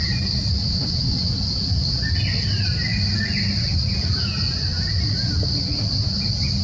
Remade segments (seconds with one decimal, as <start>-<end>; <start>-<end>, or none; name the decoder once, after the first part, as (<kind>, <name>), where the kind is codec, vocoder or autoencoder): 0.6-1.3 (vocoder, WaveNeXt)